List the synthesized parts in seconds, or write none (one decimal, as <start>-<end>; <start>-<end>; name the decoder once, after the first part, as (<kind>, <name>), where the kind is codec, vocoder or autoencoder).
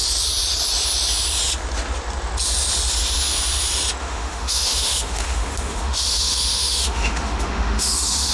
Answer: 4.0-8.3 (autoencoder, DAC-VAE)